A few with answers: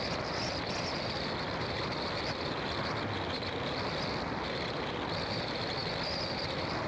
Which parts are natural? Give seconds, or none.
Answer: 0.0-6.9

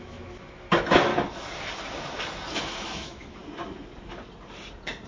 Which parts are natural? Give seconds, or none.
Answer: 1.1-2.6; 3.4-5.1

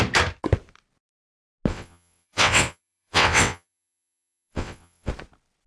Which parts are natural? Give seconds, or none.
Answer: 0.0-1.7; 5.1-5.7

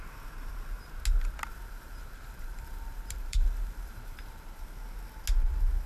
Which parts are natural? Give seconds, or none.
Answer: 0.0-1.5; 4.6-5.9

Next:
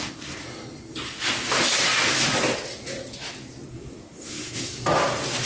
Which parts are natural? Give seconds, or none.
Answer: 0.4-3.7; 4.7-5.5

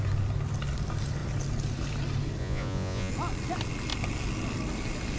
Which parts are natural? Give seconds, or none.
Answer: 0.0-2.4; 3.1-5.2